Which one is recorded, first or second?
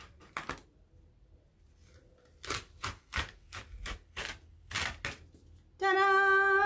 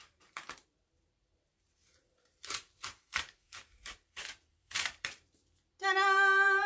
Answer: first